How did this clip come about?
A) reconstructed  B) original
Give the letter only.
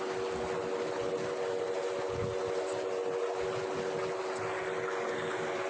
B